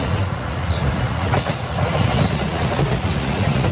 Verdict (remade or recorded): remade